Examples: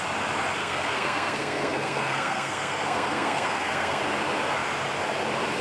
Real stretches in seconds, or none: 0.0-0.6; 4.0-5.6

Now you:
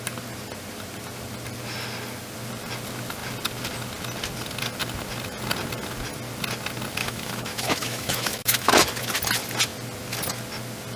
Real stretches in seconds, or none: 0.0-7.0; 8.7-11.0